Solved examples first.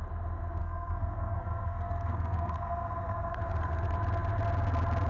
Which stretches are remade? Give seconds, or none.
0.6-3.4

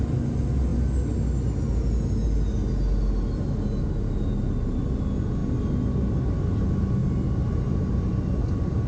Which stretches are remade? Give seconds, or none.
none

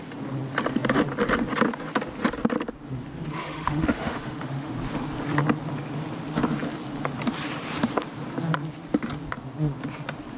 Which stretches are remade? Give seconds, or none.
3.3-4.7

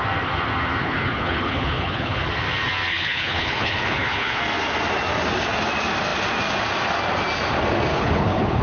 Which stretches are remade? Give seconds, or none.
0.8-2.3; 2.9-4.4; 7.9-8.6

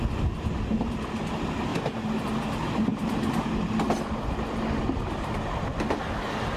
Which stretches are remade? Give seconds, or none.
none